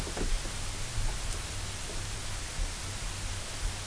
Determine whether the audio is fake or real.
real